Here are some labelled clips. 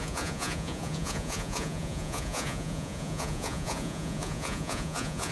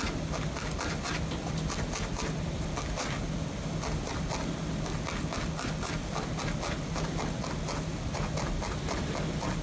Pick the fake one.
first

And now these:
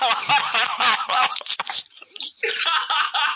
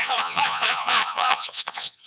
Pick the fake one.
second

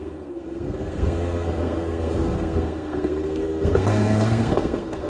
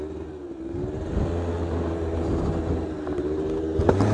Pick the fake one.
first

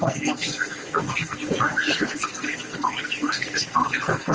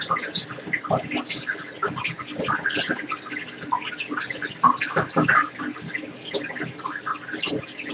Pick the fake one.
first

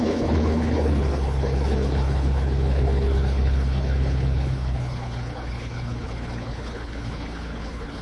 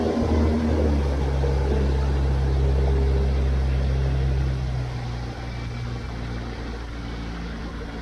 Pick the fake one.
first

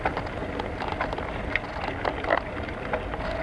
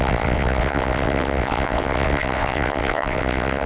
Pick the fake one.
second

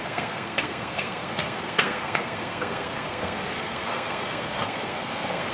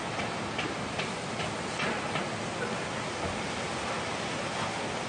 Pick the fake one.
first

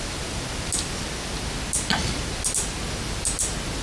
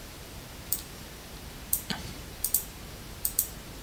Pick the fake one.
second